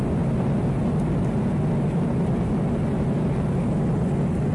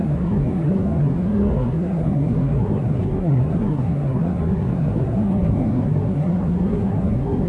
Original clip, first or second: first